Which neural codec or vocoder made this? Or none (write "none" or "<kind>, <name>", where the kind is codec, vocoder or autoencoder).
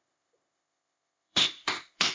codec, ZipCodec